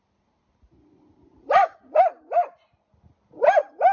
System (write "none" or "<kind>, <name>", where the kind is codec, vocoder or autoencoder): none